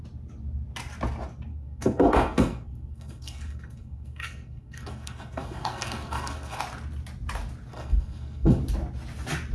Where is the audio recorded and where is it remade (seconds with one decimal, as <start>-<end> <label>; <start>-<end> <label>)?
0.0-1.5 recorded; 1.5-6.6 remade; 6.6-7.7 recorded; 7.7-8.6 remade; 8.6-9.5 recorded